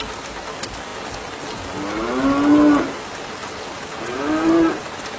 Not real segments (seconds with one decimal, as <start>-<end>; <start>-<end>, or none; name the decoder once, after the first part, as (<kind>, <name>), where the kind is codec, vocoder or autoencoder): none